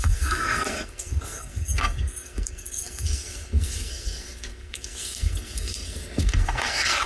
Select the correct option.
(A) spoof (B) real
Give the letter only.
A